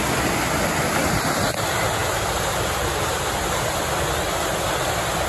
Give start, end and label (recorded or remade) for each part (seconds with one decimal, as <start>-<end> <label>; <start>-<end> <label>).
0.0-2.0 recorded; 2.0-3.7 remade; 3.7-5.3 recorded